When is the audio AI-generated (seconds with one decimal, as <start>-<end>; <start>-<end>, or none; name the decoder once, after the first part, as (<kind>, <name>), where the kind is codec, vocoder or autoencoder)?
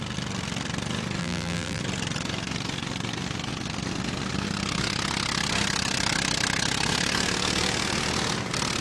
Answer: 1.2-1.8 (vocoder, BigVGAN v2)